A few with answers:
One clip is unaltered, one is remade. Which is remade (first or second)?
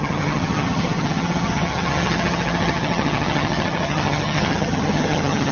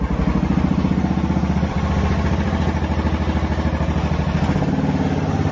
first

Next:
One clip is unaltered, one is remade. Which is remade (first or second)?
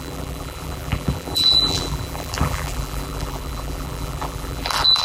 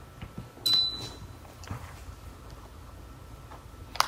first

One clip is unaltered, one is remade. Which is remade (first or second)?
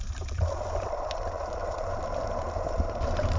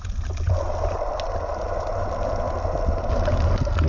first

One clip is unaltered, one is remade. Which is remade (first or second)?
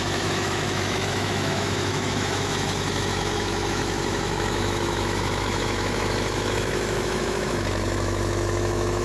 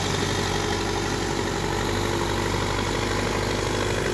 first